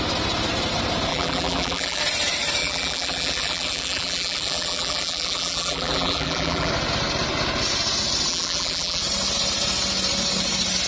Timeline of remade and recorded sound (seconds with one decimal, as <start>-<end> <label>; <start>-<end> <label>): 0.0-1.1 recorded; 1.1-2.0 remade; 2.0-2.6 recorded; 2.6-6.7 remade; 6.7-8.3 recorded; 8.3-9.0 remade; 9.0-10.9 recorded